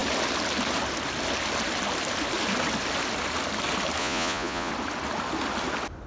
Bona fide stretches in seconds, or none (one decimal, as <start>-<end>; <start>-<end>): 0.0-4.0; 4.7-6.1